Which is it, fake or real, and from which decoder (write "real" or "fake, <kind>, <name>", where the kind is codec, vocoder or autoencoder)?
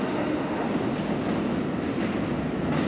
real